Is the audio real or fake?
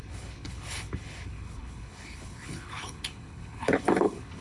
fake